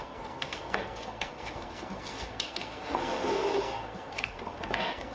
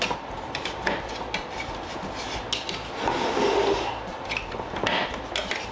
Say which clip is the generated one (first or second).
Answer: first